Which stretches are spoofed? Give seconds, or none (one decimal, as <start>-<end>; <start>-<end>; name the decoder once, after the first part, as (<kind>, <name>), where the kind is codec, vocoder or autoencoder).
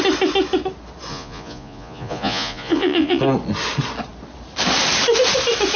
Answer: 1.1-3.2 (vocoder, Vocos)